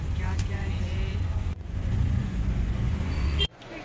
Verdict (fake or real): fake